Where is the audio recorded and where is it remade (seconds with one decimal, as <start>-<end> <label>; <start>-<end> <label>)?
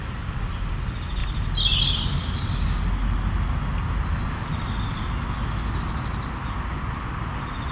0.0-7.7 recorded